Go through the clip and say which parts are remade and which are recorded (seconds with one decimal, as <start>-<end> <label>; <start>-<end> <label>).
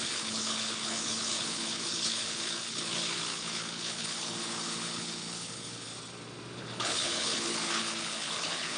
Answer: 0.0-5.9 remade; 5.9-6.6 recorded; 6.6-8.8 remade